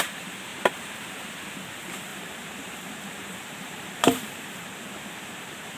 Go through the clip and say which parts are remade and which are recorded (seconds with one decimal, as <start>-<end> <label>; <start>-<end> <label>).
0.0-0.5 recorded; 0.5-1.3 remade; 1.3-2.1 recorded; 2.1-4.3 remade; 4.3-5.8 recorded